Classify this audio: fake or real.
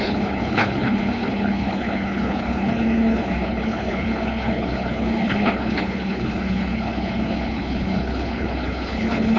fake